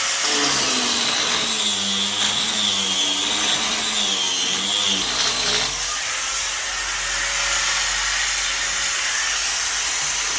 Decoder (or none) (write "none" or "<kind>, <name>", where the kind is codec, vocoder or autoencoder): none